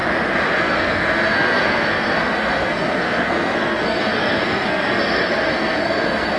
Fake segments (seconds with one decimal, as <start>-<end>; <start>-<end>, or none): 0.6-6.4